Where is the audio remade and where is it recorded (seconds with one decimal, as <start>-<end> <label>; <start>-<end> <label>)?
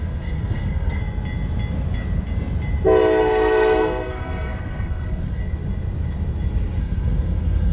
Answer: 0.0-1.0 remade; 1.0-3.2 recorded; 3.2-5.4 remade; 5.4-6.8 recorded; 6.8-7.7 remade